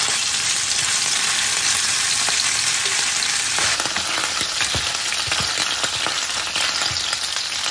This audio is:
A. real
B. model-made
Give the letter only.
A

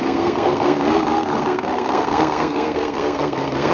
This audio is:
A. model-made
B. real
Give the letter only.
A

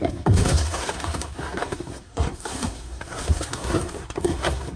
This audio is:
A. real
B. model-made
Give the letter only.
B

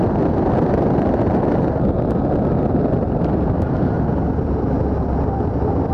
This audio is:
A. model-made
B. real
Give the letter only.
B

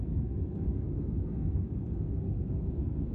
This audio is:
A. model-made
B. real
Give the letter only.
A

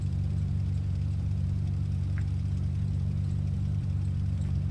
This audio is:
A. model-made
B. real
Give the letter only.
A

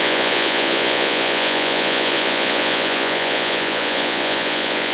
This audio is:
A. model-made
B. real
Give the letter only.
A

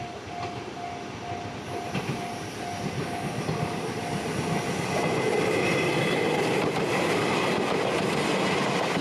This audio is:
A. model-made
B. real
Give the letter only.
B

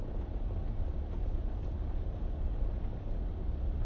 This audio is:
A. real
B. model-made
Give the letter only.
A